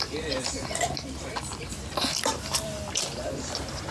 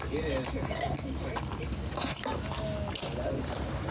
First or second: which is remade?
first